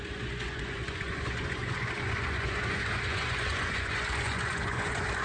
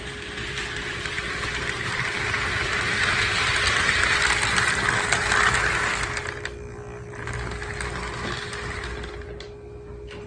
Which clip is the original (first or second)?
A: second